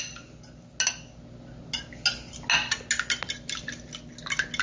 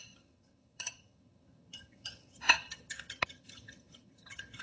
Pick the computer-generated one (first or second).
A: second